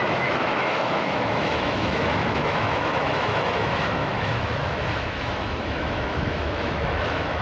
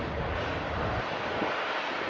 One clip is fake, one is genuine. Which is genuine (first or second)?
second